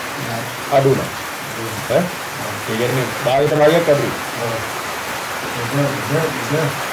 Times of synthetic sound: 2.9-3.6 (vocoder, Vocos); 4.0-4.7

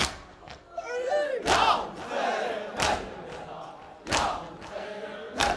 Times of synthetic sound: 0.0-1.3 (codec, SNAC); 4.7-5.6

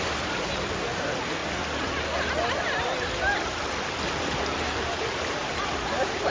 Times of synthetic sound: 0.0-1.4 (vocoder, BigVGAN v2); 4.2-6.3

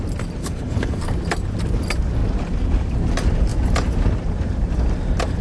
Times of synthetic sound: 0.4-1.0 (codec, HILCodec)

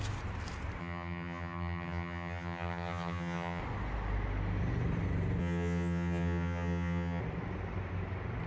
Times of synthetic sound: 0.8-3.6 (vocoder, HiFi-GAN); 5.4-7.2

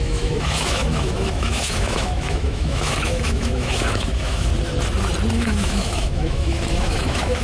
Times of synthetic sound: 0.0-4.5 (autoencoder, DAC-VAE); 5.3-7.4